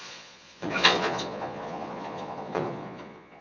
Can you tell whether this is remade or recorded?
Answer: remade